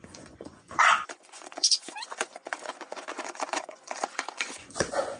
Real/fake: fake